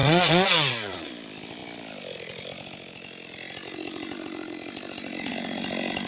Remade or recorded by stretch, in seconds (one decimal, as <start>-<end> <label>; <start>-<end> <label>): 0.0-1.1 remade; 1.1-6.1 recorded